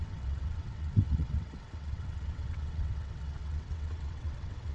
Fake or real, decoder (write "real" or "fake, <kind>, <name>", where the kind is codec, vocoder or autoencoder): fake, vocoder, WaveNeXt